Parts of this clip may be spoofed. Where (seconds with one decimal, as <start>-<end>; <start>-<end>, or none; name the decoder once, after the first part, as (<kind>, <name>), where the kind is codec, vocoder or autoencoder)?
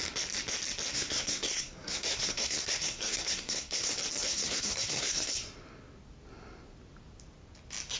0.9-3.9 (codec, SNAC); 4.3-5.3